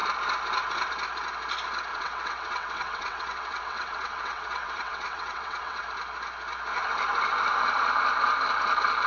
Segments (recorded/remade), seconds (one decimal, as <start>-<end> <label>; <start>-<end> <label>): 0.0-1.9 recorded; 1.9-5.8 remade; 5.8-9.1 recorded